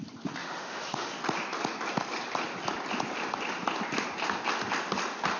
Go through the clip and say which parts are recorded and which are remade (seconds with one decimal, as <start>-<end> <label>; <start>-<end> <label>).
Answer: 0.0-0.4 recorded; 0.4-1.1 remade; 1.1-5.4 recorded